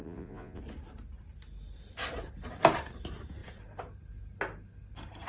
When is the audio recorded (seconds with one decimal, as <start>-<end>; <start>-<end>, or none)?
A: 0.6-5.3